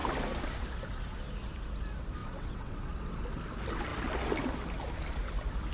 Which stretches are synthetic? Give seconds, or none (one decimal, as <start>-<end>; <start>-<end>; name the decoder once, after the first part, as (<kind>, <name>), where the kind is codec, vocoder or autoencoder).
2.2-2.9 (vocoder, WaveNeXt)

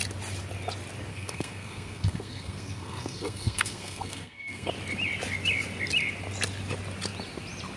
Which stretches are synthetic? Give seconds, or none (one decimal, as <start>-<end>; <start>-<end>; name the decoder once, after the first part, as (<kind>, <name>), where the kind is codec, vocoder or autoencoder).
1.1-4.7 (codec, SNAC)

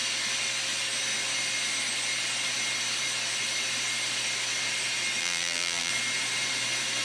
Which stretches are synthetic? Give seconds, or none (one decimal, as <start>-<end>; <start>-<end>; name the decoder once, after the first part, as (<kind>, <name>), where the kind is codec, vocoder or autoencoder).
5.2-5.9 (vocoder, BigVGAN v2)

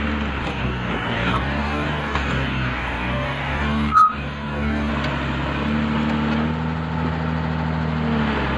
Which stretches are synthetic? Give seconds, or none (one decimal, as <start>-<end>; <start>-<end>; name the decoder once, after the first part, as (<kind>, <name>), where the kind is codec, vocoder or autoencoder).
0.4-4.9 (codec, DAC)

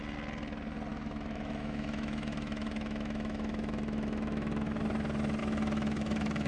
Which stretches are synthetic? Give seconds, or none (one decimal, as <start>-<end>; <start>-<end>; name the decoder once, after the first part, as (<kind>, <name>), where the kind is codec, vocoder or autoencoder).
0.9-4.8 (autoencoder, DAC-VAE); 5.4-6.5

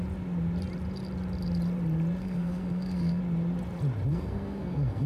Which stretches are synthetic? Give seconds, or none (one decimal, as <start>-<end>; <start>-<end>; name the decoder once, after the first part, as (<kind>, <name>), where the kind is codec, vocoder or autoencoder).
2.2-3.2 (codec, SNAC); 4.1-5.1

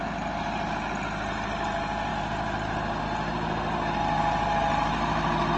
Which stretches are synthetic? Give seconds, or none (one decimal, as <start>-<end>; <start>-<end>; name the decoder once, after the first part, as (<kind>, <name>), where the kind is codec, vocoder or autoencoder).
none

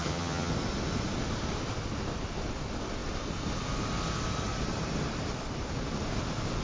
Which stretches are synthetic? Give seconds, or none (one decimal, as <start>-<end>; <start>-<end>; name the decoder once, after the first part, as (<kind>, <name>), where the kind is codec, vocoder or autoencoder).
0.0-0.5 (vocoder, HiFi-GAN)